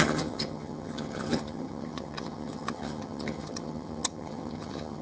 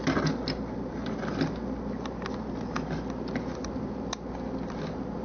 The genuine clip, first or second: second